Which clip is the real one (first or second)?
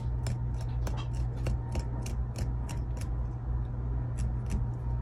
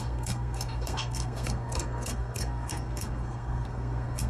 first